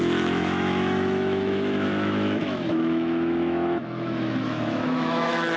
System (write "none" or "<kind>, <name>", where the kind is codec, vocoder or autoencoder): autoencoder, DAC-VAE